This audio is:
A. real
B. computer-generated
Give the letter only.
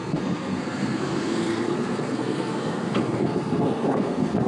B